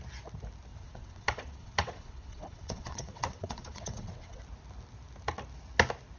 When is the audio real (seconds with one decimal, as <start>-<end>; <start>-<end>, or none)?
0.0-0.7; 4.4-6.2